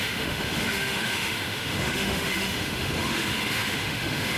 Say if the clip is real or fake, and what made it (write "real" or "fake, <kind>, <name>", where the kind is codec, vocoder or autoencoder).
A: fake, autoencoder, DAC-VAE